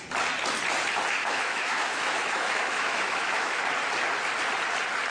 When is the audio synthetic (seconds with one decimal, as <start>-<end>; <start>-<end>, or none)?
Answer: 1.2-3.6